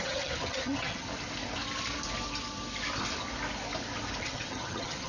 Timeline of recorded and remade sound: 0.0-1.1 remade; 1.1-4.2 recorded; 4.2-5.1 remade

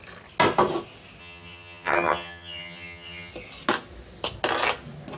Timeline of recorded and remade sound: 0.0-1.2 recorded; 1.2-3.3 remade; 3.3-5.2 recorded

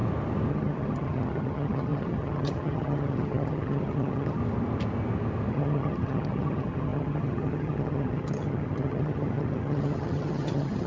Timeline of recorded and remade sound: 0.0-0.5 recorded; 0.5-4.4 remade; 4.4-5.5 recorded; 5.5-10.9 remade

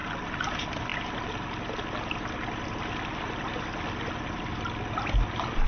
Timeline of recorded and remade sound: 0.0-5.7 recorded